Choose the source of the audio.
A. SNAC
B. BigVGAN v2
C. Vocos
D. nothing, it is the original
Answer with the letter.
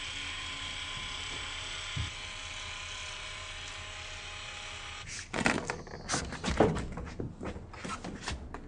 D